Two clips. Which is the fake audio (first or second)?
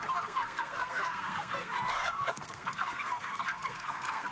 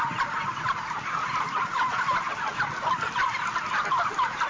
first